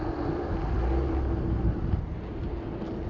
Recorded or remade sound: recorded